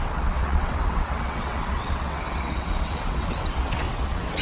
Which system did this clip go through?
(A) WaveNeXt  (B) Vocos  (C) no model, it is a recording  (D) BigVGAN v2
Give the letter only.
A